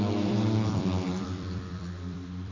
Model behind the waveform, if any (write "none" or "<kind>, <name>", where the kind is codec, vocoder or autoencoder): vocoder, BigVGAN v2